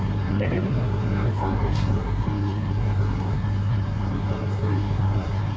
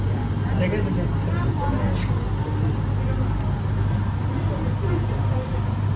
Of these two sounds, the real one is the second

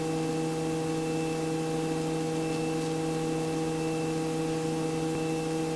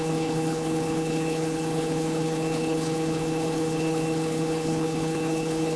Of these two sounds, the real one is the first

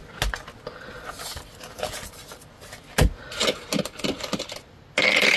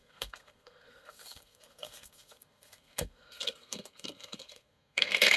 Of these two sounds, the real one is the first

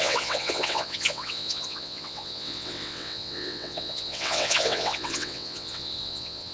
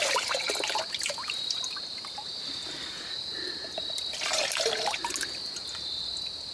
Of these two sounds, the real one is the second